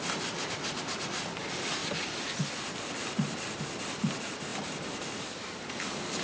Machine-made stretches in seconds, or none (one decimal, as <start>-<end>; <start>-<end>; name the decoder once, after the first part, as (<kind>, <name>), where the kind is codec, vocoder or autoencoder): none